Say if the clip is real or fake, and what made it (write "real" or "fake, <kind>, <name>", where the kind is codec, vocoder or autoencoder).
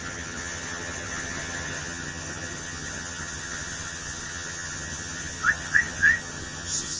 fake, vocoder, HiFi-GAN